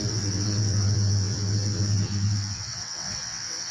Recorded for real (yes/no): no